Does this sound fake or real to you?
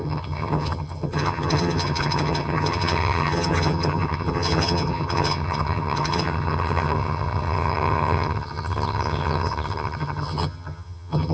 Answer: fake